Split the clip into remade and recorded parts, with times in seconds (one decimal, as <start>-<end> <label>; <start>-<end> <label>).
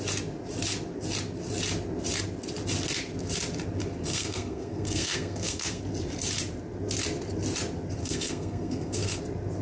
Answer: 0.0-4.1 recorded; 4.1-5.8 remade; 5.8-8.0 recorded; 8.0-9.2 remade; 9.2-9.6 recorded